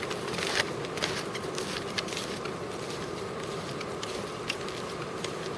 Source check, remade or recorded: recorded